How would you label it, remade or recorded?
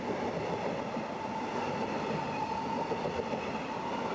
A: recorded